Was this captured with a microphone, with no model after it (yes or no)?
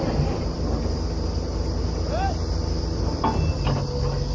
yes